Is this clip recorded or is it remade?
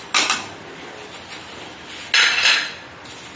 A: recorded